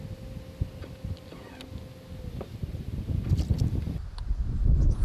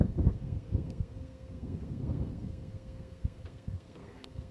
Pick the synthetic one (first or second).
second